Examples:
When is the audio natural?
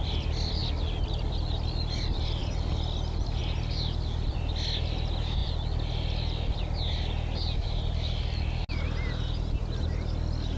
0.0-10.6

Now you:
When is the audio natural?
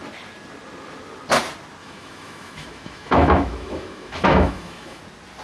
0.0-1.8; 5.0-5.4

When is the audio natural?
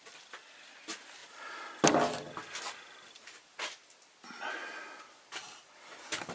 0.0-6.3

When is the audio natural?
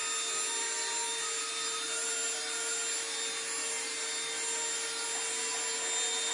0.0-6.3